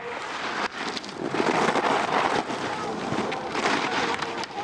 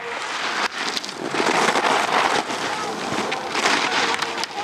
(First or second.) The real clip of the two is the second